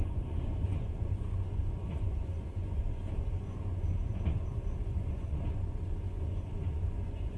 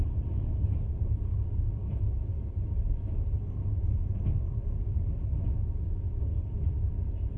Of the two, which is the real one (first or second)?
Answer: second